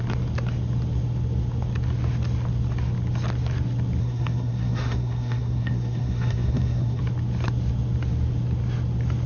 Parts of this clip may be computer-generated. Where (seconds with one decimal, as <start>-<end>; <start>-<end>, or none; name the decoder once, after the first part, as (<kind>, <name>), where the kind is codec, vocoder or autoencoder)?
4.0-7.0 (codec, SNAC)